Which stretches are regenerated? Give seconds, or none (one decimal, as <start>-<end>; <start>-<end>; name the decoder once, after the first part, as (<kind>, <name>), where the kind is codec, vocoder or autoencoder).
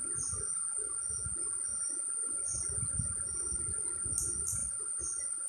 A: 4.6-5.5 (vocoder, BigVGAN v2)